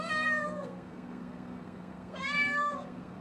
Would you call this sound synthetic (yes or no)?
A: yes